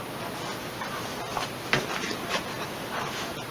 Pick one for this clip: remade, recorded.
recorded